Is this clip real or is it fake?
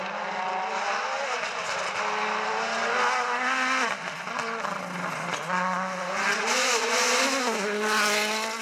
real